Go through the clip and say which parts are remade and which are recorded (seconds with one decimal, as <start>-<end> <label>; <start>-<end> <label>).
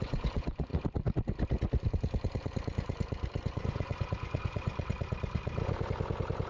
0.0-0.7 remade; 0.7-3.6 recorded; 3.6-4.7 remade; 4.7-6.5 recorded